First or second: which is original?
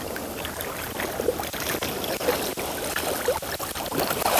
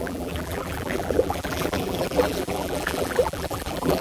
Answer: first